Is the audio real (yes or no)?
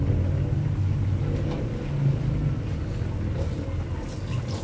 yes